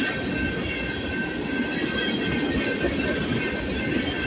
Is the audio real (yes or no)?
yes